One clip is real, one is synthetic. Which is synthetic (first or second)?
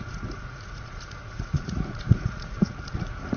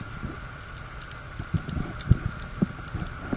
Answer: first